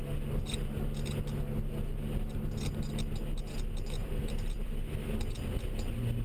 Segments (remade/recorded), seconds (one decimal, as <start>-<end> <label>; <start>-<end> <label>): 0.0-4.0 recorded; 4.0-4.7 remade; 4.7-6.2 recorded